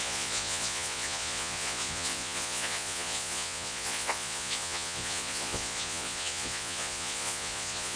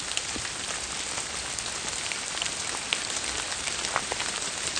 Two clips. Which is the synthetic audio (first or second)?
first